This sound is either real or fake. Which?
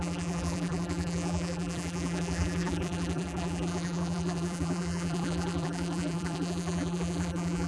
fake